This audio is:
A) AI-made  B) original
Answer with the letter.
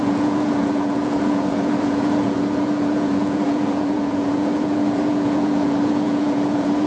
A